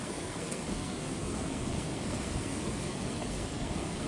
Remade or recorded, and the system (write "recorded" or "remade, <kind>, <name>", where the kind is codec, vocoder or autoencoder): remade, codec, SNAC